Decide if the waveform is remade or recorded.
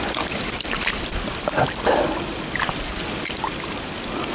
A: recorded